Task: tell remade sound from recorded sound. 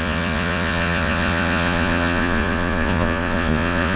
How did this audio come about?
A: remade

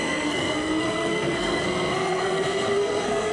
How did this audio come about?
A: remade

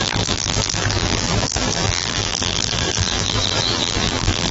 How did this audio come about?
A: remade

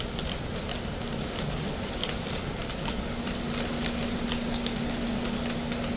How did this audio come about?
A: recorded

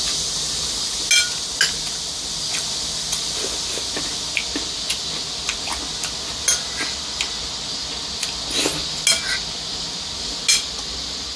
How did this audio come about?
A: recorded